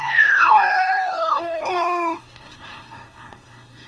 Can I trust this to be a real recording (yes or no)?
no